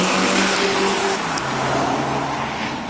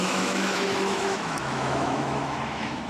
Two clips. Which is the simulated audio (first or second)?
second